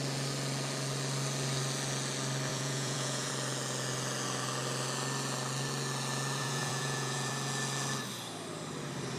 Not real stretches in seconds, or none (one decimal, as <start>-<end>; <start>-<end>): 2.5-3.3; 6.4-7.3